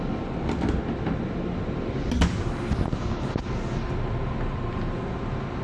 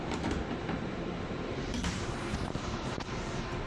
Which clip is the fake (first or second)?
second